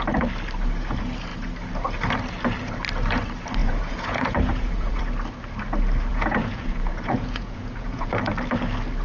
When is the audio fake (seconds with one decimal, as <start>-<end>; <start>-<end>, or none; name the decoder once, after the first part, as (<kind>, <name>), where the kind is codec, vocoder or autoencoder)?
3.6-5.0 (vocoder, Vocos); 6.1-8.1